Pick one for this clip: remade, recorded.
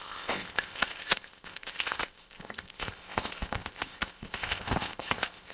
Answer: remade